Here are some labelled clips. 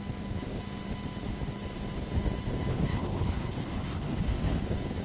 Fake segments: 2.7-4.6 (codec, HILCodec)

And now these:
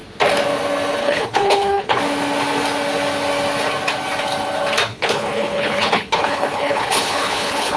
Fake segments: 1.0-2.0 (codec, HILCodec); 4.9-7.8

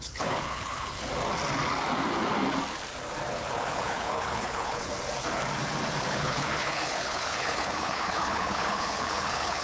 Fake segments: 0.0-1.1 (codec, HILCodec); 3.3-4.9; 6.0-9.6